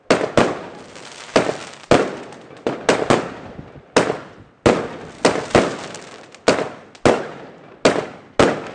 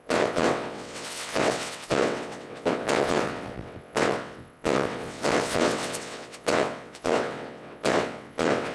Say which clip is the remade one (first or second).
second